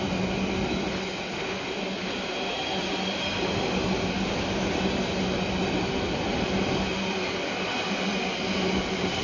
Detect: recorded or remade recorded